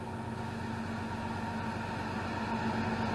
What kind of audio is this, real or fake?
real